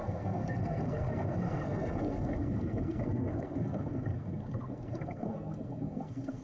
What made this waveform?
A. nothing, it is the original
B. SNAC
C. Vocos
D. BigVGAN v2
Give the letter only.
B